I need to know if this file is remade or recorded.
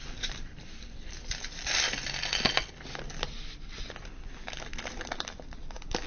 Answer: remade